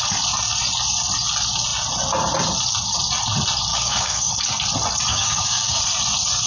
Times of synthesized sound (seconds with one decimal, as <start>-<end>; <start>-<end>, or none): 3.7-4.3; 5.1-5.8